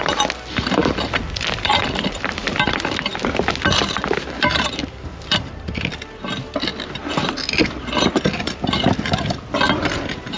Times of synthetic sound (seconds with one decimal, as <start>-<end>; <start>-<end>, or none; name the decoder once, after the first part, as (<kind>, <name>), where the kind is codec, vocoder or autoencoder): 0.0-0.8 (vocoder, BigVGAN v2); 1.8-3.1; 3.7-10.4